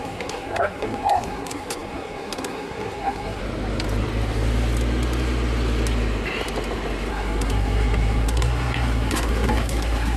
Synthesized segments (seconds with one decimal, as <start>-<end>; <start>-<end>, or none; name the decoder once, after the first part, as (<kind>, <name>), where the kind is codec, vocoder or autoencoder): 0.0-3.4 (codec, SNAC); 7.1-10.2